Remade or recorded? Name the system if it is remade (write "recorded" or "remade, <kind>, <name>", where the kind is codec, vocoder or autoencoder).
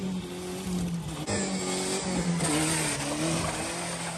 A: recorded